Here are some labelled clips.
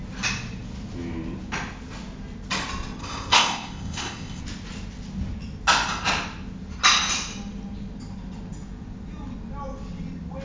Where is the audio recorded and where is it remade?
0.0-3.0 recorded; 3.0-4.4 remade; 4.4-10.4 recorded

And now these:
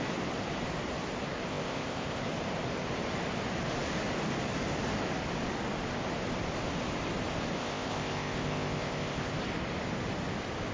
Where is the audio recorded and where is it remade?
0.0-1.5 recorded; 1.5-2.2 remade; 2.2-7.6 recorded; 7.6-9.3 remade; 9.3-10.7 recorded

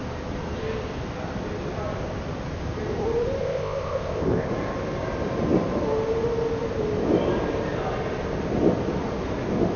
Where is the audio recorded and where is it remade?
0.0-3.4 recorded; 3.4-4.5 remade; 4.5-9.8 recorded

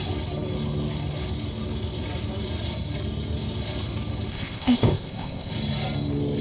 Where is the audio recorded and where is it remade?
0.0-4.3 recorded; 4.3-5.5 remade; 5.5-6.4 recorded